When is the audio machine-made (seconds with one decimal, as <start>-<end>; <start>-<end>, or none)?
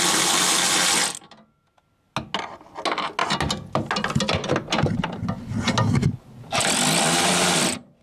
none